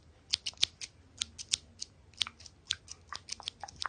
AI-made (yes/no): no